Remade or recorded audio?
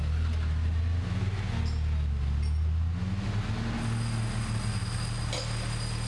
recorded